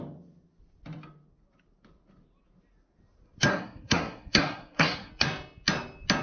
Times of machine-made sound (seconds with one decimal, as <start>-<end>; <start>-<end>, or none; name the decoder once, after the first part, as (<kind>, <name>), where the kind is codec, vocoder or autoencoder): 3.5-5.1 (codec, SNAC)